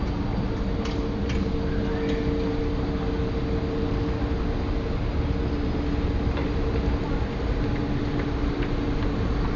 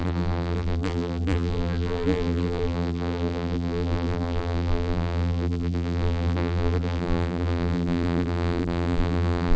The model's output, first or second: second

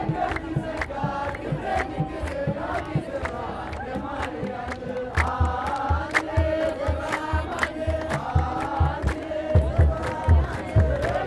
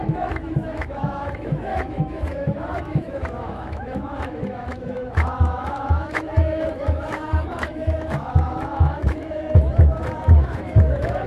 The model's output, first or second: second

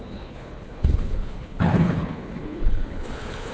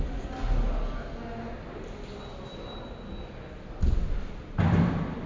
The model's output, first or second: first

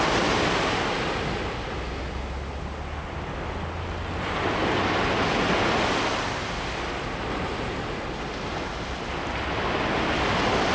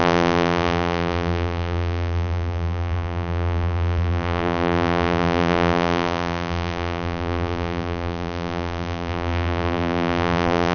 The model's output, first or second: second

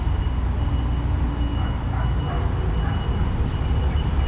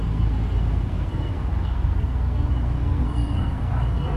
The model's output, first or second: second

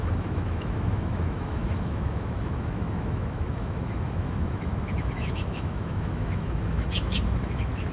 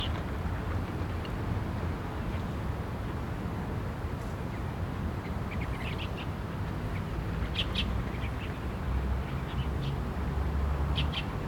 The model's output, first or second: first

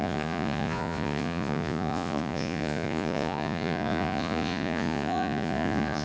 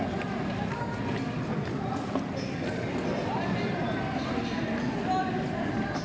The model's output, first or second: first